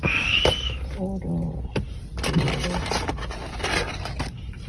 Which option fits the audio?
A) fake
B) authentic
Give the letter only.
B